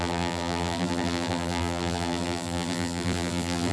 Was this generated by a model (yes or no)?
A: yes